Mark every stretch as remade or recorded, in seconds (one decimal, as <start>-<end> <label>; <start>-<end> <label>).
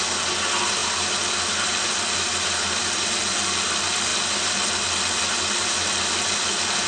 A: 0.0-6.9 recorded